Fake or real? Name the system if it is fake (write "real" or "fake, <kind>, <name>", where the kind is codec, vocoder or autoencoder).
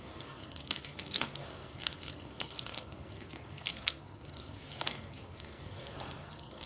fake, codec, SNAC